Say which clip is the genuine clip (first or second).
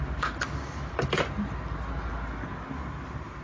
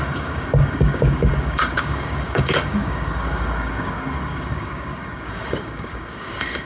first